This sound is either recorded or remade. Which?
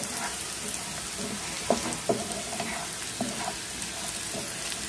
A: recorded